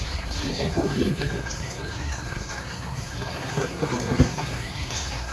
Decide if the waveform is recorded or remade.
remade